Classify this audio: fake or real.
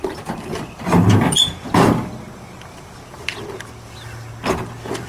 real